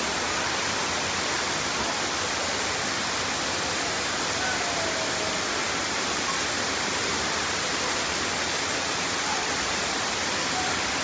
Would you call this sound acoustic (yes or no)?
yes